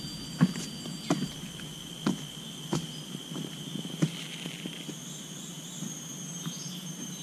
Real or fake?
real